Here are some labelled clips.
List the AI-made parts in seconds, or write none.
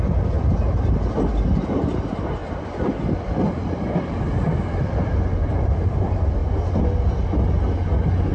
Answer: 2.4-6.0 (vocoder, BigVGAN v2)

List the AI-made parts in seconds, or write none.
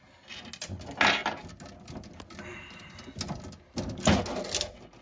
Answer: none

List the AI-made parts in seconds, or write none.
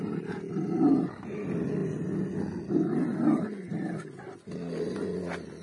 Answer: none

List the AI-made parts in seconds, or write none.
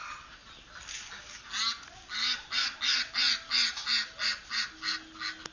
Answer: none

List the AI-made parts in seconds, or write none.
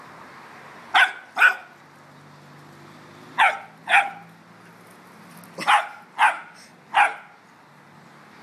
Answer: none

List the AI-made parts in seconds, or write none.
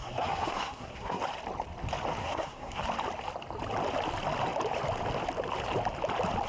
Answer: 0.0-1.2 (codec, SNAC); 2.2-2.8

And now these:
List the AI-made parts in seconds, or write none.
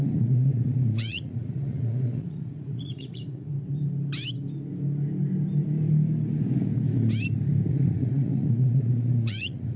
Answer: 0.0-3.5 (vocoder, Vocos); 7.7-9.8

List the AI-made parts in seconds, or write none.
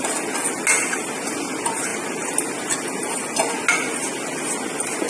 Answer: none